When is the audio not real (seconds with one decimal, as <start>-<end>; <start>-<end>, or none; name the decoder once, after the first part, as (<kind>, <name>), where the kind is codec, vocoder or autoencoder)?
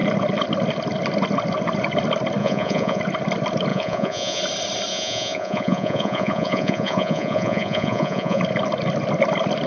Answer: 2.4-3.0 (vocoder, Vocos); 3.7-4.4; 4.9-8.4